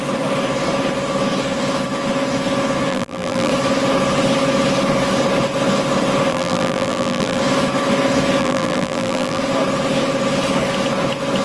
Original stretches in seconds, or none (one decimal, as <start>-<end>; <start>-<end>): 0.0-2.9; 3.5-6.3; 7.4-8.4; 9.4-11.4